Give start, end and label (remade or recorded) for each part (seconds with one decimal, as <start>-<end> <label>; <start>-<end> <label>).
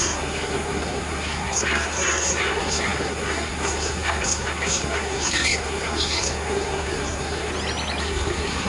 0.0-7.5 remade; 7.5-8.0 recorded; 8.0-8.7 remade